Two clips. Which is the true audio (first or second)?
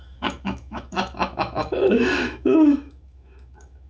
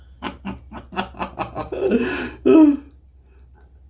second